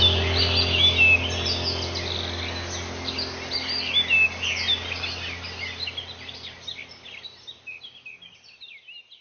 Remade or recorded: recorded